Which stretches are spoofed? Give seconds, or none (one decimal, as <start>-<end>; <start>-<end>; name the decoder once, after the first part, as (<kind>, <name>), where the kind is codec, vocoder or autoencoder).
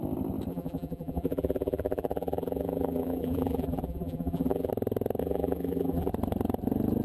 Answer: 0.5-4.7 (vocoder, BigVGAN v2); 5.2-6.1